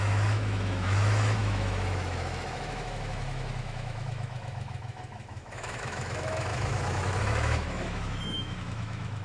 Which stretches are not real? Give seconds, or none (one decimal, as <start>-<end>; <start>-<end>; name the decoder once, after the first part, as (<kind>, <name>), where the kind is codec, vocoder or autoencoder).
0.0-9.2 (autoencoder, DAC-VAE)